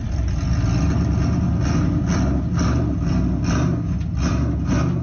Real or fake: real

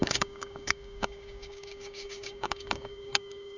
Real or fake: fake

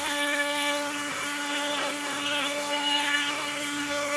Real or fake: fake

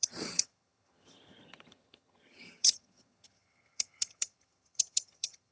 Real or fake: fake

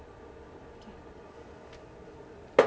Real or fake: real